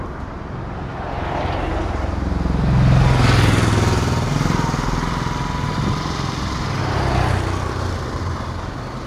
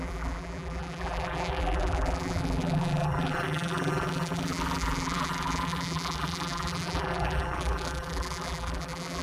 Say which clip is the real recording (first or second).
first